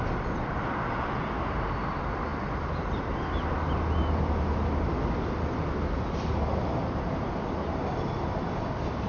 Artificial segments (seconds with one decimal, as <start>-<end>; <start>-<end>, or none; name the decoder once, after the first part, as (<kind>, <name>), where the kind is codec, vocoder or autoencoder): none

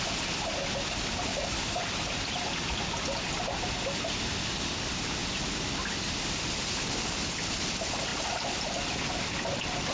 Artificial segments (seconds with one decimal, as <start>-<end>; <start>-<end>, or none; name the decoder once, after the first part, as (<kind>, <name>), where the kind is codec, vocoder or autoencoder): 1.8-3.0 (vocoder, BigVGAN v2); 5.2-7.3

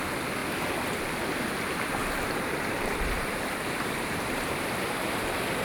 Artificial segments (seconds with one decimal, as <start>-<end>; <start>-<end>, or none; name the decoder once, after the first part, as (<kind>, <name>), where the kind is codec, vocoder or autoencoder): 2.0-5.6 (vocoder, BigVGAN v2)